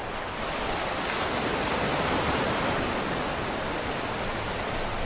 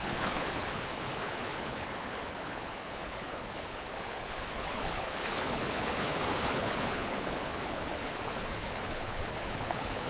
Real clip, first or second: first